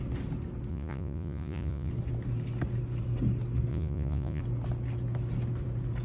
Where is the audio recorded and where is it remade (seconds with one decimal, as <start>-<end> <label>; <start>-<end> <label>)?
0.0-0.7 recorded; 0.7-1.9 remade; 1.9-3.7 recorded; 3.7-4.4 remade; 4.4-6.0 recorded